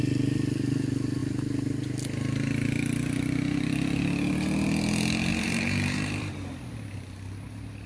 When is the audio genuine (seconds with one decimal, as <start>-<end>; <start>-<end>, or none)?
0.0-5.3; 6.3-7.9